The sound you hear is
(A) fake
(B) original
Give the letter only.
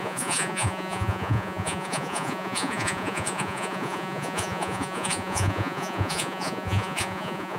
A